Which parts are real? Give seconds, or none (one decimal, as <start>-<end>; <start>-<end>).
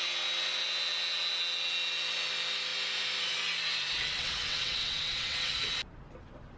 0.0-4.1; 5.5-6.6